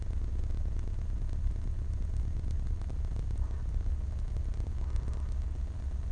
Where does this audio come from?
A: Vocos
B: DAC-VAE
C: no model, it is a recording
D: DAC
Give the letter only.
C